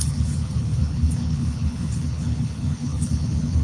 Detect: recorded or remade remade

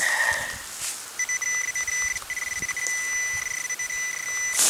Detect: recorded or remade recorded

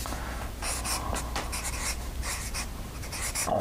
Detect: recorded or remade recorded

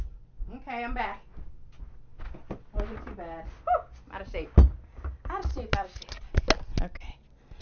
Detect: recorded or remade recorded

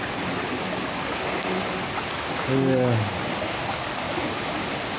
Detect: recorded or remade recorded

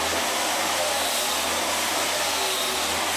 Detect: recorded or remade recorded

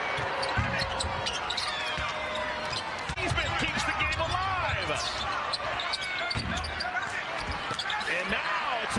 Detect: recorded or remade recorded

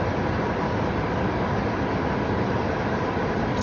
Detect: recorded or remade recorded